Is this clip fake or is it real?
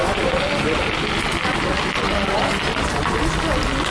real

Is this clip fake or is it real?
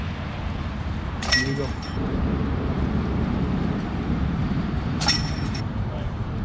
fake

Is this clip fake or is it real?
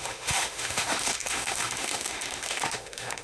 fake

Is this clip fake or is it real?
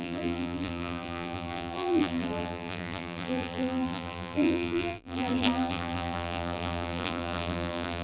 fake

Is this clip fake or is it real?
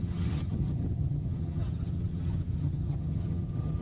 fake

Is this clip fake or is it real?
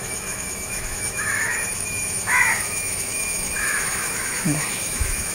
fake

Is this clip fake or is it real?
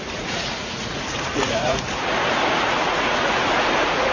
fake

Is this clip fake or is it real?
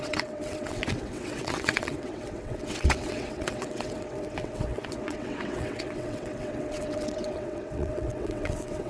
fake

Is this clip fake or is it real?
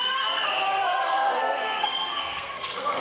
fake